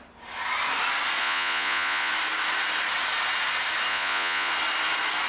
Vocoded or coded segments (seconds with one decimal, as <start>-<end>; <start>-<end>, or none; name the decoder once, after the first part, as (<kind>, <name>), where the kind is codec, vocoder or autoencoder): 1.2-2.1 (vocoder, Vocos); 3.9-4.5